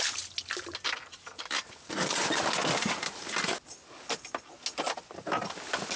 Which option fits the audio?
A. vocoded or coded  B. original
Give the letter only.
B